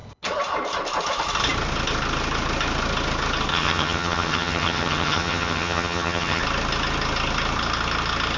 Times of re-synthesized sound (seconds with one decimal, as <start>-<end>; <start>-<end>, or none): 3.5-6.4